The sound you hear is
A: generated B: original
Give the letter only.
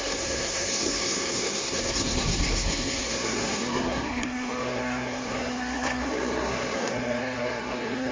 A